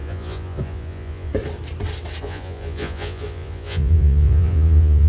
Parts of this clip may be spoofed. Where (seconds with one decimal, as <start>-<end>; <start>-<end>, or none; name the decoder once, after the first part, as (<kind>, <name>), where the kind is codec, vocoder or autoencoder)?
0.0-1.3 (vocoder, Vocos); 2.2-5.1